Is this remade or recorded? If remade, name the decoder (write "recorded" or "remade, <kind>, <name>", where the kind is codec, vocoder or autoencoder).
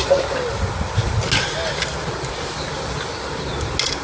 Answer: recorded